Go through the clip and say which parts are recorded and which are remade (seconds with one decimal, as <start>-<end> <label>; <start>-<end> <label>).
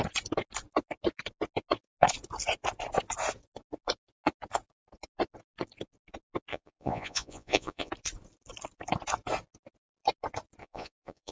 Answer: 0.0-6.5 recorded; 6.5-7.9 remade; 7.9-10.6 recorded; 10.6-11.3 remade